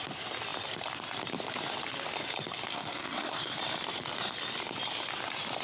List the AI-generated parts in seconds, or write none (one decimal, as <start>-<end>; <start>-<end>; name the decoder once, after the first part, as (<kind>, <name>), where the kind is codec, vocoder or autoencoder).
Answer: 2.7-3.5 (codec, SNAC)